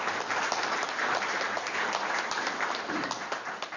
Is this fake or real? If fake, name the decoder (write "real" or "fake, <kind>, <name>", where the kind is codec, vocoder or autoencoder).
real